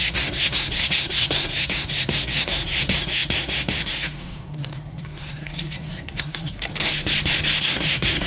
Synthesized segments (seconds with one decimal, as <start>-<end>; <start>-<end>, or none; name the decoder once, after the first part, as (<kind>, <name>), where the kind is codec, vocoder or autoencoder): 0.0-6.7 (codec, SNAC); 7.6-8.3